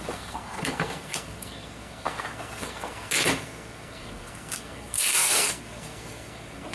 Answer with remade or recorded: remade